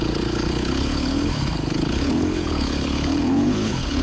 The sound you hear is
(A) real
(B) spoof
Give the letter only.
B